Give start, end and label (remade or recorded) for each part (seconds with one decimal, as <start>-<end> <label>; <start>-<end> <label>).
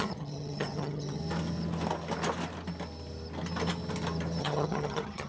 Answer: 0.0-1.2 remade; 1.2-4.4 recorded; 4.4-5.3 remade